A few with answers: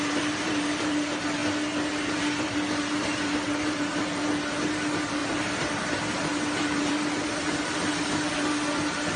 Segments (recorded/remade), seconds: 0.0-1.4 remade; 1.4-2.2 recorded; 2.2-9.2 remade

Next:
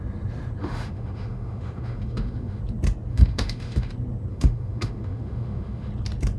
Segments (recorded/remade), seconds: 0.0-0.6 recorded; 0.6-2.6 remade; 2.6-3.1 recorded; 3.1-3.9 remade; 3.9-4.3 recorded; 4.3-5.9 remade; 5.9-6.4 recorded

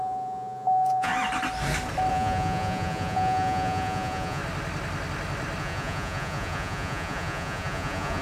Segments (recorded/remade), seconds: 0.0-1.1 remade; 1.1-2.1 recorded; 2.1-4.4 remade; 4.4-5.6 recorded; 5.6-8.2 remade

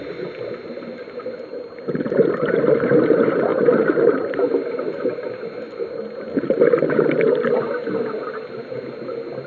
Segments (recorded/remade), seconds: 0.0-9.5 recorded

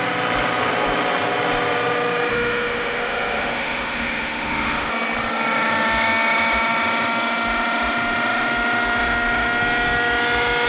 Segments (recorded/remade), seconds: 0.0-2.3 recorded; 2.3-4.9 remade; 4.9-10.7 recorded

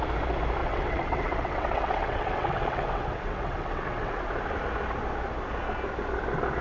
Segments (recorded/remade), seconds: 0.0-0.6 recorded; 0.6-4.2 remade; 4.2-6.6 recorded

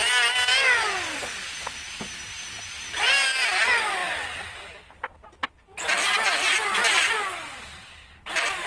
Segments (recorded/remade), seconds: 0.0-8.7 recorded